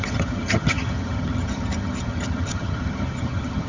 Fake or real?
fake